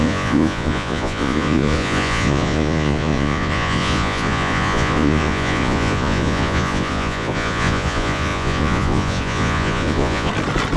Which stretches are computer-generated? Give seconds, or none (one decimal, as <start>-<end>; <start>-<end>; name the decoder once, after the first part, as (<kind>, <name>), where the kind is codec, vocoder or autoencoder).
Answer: 0.0-10.3 (vocoder, Vocos)